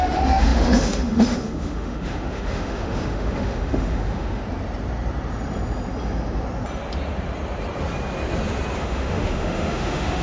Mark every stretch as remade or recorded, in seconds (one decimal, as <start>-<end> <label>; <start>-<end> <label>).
0.0-4.4 remade; 4.4-8.8 recorded; 8.8-10.2 remade